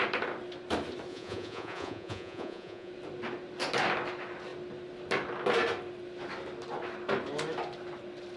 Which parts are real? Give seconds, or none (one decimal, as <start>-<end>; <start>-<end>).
0.0-1.1; 2.9-8.4